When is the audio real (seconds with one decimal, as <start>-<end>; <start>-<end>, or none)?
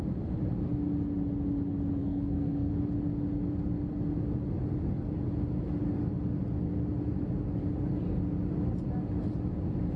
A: 0.0-2.0; 2.7-10.0